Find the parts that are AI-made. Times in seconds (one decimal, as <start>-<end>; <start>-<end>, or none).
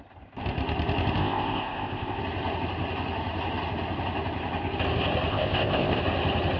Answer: 1.2-2.2; 5.3-6.0